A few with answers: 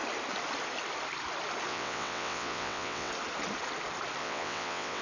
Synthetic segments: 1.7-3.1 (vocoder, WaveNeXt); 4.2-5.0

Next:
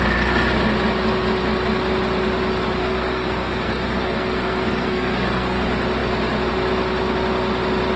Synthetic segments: 2.8-5.6 (codec, SNAC)

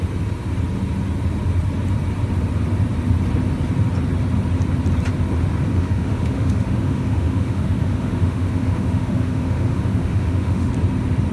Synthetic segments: 5.7-10.7 (autoencoder, DAC-VAE)

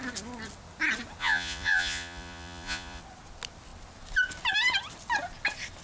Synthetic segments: 1.2-3.0 (vocoder, Vocos)

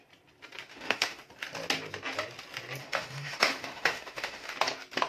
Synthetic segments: 0.7-1.2 (autoencoder, DAC-VAE); 2.8-4.5

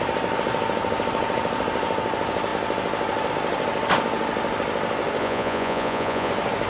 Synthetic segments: 5.2-6.3 (vocoder, Vocos)

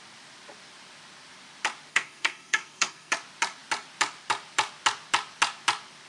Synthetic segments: 1.9-3.1 (codec, SNAC)

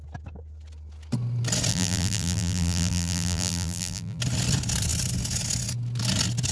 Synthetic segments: 1.7-4.2 (vocoder, BigVGAN v2)